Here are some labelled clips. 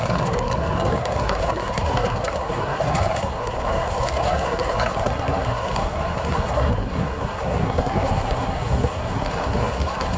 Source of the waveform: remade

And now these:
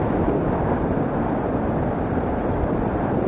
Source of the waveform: recorded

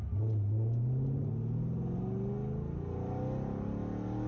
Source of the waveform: recorded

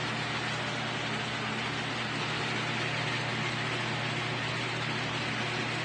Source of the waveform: recorded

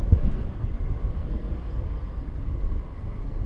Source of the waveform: remade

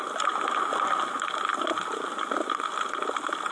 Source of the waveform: recorded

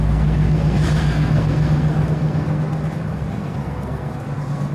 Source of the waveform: remade